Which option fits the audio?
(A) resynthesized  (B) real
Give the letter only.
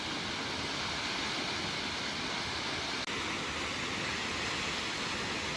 B